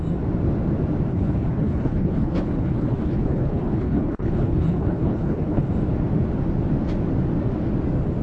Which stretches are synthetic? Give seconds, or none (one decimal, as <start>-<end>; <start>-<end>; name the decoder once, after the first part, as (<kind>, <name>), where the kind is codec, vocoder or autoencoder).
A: 1.1-5.7 (codec, HILCodec)